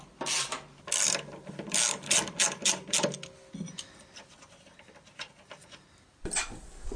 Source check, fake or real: real